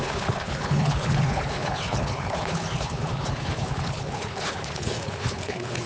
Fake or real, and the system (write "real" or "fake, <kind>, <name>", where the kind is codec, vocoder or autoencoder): fake, codec, HILCodec